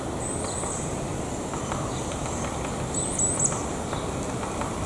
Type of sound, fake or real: real